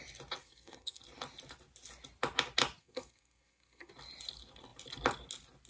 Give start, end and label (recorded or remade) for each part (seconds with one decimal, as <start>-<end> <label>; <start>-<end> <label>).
0.0-0.4 recorded; 0.4-1.0 remade; 1.0-2.8 recorded; 2.8-3.9 remade; 3.9-5.7 recorded